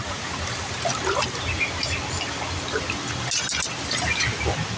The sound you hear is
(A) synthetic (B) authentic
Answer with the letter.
B